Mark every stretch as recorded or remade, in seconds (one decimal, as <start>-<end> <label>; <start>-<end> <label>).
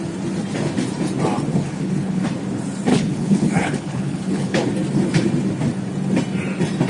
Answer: 0.0-1.5 recorded; 1.5-2.2 remade; 2.2-2.9 recorded; 2.9-4.7 remade; 4.7-6.9 recorded